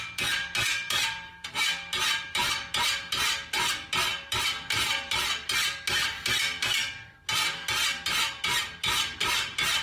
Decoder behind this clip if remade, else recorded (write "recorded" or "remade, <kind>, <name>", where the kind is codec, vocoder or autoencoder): recorded